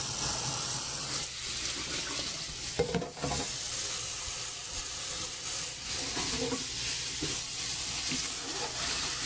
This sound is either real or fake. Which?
real